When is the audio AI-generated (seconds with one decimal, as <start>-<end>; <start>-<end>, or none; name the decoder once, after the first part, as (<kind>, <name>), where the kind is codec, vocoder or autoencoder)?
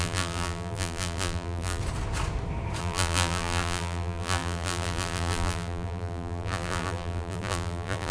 0.0-1.8 (vocoder, BigVGAN v2); 2.8-8.1